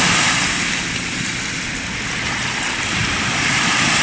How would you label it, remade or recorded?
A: remade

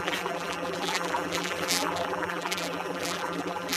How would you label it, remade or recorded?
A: remade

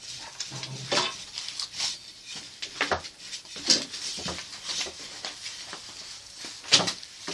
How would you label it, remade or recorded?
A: remade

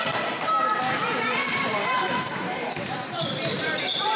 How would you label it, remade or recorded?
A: remade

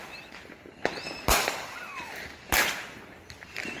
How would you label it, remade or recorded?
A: recorded